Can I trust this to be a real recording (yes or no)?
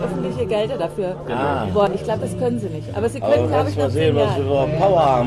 yes